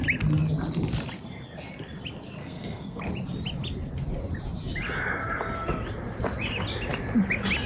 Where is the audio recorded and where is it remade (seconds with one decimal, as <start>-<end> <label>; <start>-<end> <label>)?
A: 0.0-2.4 recorded; 2.4-3.0 remade; 3.0-7.7 recorded